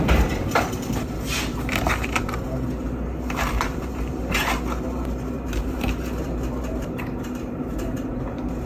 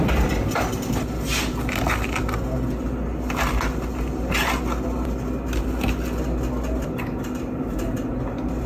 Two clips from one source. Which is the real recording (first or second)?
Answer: second